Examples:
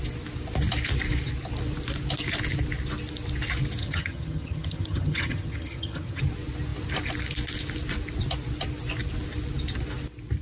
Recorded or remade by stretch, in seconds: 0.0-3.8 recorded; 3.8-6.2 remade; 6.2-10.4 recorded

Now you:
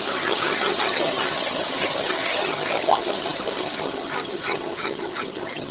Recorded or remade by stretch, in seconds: 0.0-5.7 remade

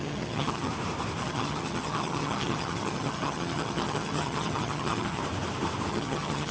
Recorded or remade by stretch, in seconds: 0.0-0.7 remade; 0.7-1.2 recorded; 1.2-5.2 remade; 5.2-5.9 recorded; 5.9-6.5 remade

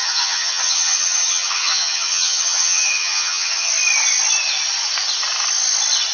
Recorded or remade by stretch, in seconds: 0.0-3.7 remade; 3.7-6.1 recorded

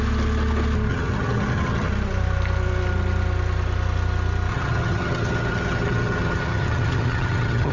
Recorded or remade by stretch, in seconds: 0.0-0.9 recorded; 0.9-1.9 remade; 1.9-4.5 recorded; 4.5-7.7 remade

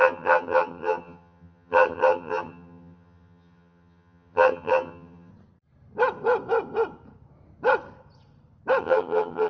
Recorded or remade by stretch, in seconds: 0.0-5.3 remade; 5.3-8.8 recorded; 8.8-9.5 remade

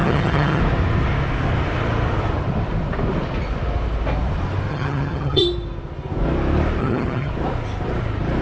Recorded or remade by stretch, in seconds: 0.0-0.6 remade; 0.6-4.7 recorded; 4.7-5.4 remade; 5.4-6.8 recorded; 6.8-7.3 remade; 7.3-8.4 recorded